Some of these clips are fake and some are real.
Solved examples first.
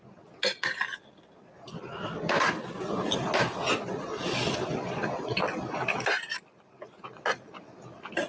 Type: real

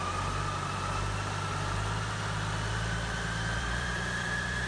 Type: fake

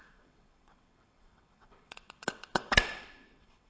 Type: fake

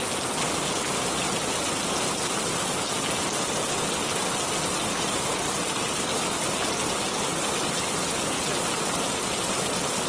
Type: real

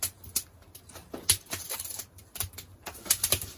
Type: real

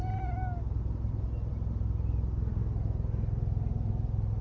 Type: real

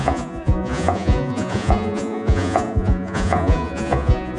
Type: fake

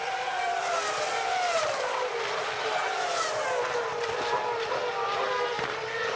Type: fake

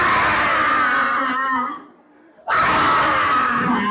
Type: real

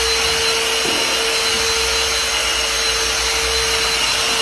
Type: real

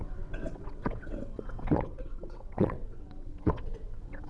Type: fake